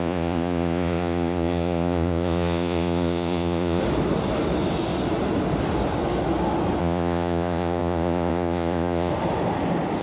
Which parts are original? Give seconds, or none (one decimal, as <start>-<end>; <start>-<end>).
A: 3.8-6.8; 9.1-10.0

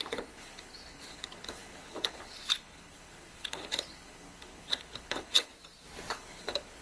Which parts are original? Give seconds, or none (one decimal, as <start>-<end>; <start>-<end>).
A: 5.5-6.1